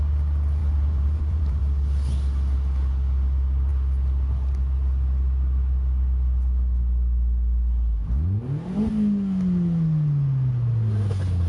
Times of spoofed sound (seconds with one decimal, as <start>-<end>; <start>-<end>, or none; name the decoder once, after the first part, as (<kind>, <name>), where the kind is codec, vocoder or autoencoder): 0.6-1.6 (vocoder, BigVGAN v2)